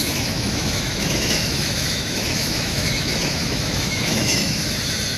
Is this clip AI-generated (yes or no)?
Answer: yes